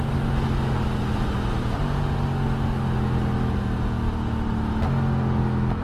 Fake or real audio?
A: real